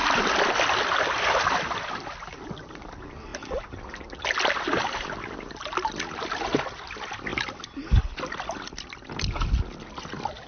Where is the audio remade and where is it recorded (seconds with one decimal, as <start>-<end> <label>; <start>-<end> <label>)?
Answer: 0.0-10.5 recorded